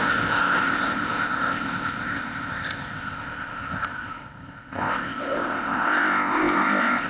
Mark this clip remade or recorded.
remade